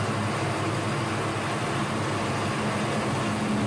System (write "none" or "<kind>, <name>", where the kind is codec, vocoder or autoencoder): none